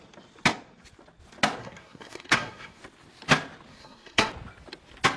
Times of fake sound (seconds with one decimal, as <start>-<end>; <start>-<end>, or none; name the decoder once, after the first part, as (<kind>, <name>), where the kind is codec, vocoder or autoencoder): 1.6-2.8 (codec, SNAC); 3.7-4.3